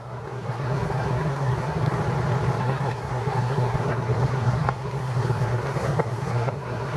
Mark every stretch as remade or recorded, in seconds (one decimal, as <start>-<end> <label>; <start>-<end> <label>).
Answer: 0.0-2.0 remade; 2.0-2.6 recorded; 2.6-7.0 remade